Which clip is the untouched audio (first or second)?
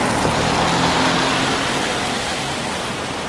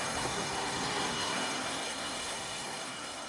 first